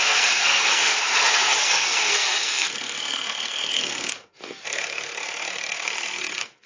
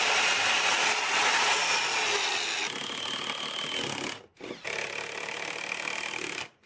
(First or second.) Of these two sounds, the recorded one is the second